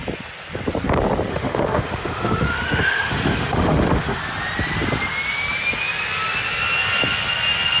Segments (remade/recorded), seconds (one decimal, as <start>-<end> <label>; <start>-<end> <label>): 0.0-1.3 recorded; 1.3-4.2 remade; 4.2-7.8 recorded